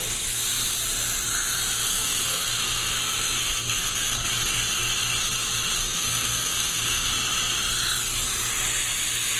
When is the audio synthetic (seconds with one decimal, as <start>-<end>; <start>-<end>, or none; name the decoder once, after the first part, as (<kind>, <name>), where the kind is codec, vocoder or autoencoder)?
1.9-4.3 (codec, SNAC); 5.8-7.1